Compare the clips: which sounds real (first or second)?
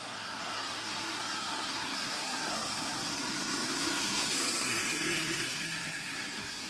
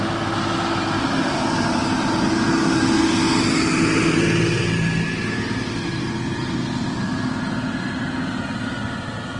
second